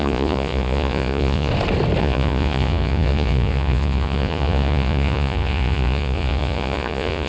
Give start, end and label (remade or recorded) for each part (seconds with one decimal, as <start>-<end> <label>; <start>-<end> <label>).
0.0-1.5 remade; 1.5-2.0 recorded; 2.0-7.3 remade